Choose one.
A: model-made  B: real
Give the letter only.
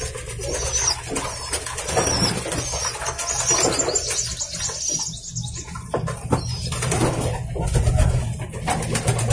B